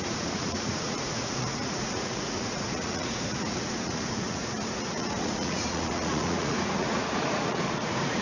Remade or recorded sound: remade